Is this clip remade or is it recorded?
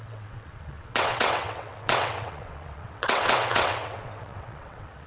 remade